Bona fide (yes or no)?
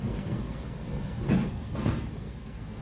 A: no